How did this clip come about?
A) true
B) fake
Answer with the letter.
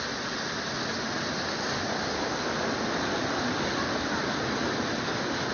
A